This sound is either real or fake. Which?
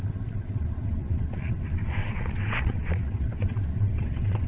fake